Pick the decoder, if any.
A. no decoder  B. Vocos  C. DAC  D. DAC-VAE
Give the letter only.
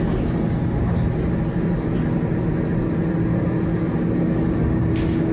A